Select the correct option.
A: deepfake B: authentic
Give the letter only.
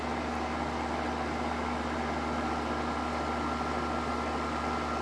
B